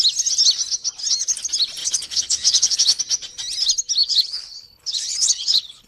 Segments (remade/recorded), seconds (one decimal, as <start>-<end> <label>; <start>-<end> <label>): 0.0-1.8 recorded; 1.8-3.0 remade; 3.0-4.0 recorded; 4.0-5.9 remade